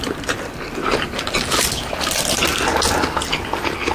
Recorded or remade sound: recorded